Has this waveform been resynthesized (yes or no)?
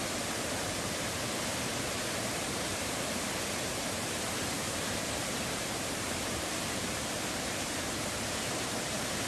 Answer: yes